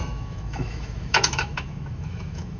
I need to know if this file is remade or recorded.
remade